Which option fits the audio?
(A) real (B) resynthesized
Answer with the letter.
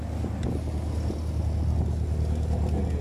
A